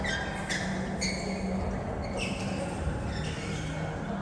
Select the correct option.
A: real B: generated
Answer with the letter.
A